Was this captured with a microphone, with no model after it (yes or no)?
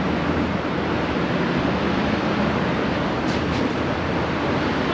yes